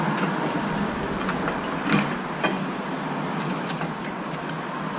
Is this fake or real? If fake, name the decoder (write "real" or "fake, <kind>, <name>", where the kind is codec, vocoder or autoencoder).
real